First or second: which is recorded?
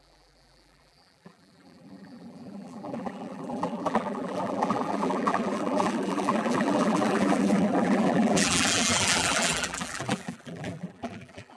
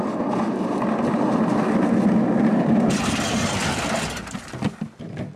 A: second